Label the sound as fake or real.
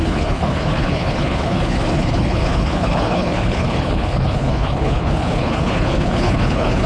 fake